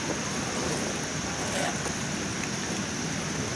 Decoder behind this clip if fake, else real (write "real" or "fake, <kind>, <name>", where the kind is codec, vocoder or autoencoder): real